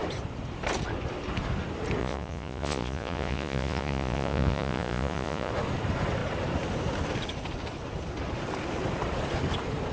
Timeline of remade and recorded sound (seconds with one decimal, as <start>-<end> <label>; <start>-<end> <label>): 0.0-2.0 recorded; 2.0-5.5 remade; 5.5-9.9 recorded